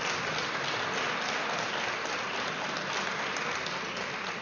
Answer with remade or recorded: recorded